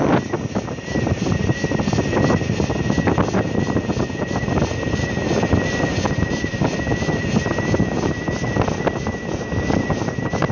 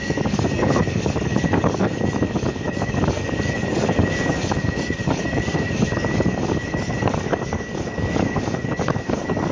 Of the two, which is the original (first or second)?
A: first